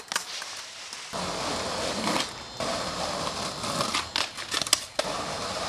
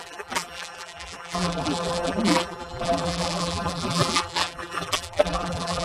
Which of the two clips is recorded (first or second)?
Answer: first